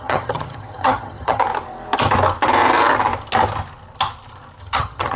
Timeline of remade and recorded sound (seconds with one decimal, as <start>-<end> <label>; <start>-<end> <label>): 0.0-1.5 remade; 1.5-4.6 recorded; 4.6-5.2 remade